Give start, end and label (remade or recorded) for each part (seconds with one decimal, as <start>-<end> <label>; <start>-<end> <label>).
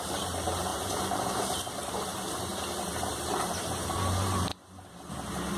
0.0-2.5 remade; 2.5-3.1 recorded; 3.1-4.5 remade; 4.5-5.1 recorded; 5.1-5.6 remade